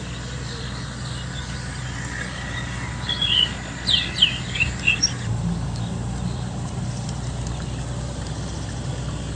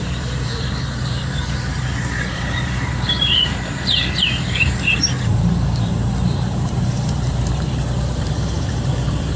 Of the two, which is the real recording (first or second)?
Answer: first